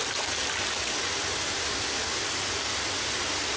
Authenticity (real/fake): real